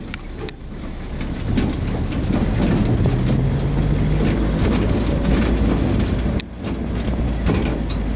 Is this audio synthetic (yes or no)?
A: no